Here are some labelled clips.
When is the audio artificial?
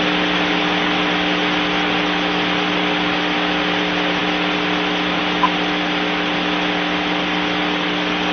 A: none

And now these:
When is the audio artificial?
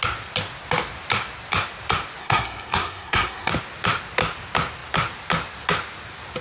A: 2.2-3.5 (codec, SNAC)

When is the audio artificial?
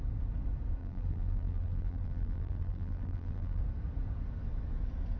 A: 0.8-3.6 (vocoder, BigVGAN v2)